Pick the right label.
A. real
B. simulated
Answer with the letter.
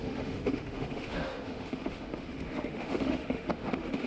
B